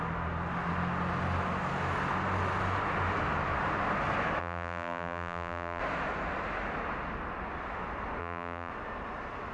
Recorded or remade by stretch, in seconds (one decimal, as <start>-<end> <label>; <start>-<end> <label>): 0.0-4.4 recorded; 4.4-5.8 remade; 5.8-8.2 recorded; 8.2-8.7 remade; 8.7-9.5 recorded